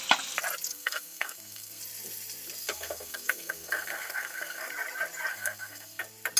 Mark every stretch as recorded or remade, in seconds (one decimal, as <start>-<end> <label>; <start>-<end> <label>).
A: 0.0-0.7 recorded; 0.7-1.8 remade; 1.8-2.6 recorded; 2.6-4.7 remade; 4.7-5.3 recorded; 5.3-6.0 remade; 6.0-6.4 recorded